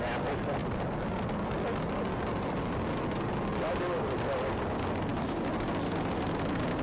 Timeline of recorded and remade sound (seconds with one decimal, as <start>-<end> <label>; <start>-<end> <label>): 0.0-6.8 recorded